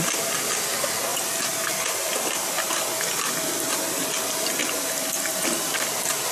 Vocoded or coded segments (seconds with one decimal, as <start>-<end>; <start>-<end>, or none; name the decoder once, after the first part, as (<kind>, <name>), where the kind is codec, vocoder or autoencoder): none